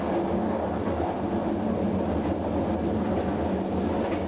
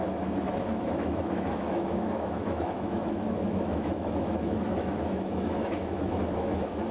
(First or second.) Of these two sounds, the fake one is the second